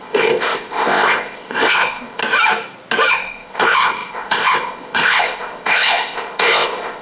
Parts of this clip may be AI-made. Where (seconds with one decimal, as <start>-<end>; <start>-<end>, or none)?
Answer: 0.0-2.2; 3.1-7.0